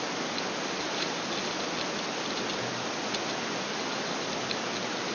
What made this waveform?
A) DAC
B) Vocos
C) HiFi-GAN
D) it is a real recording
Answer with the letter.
D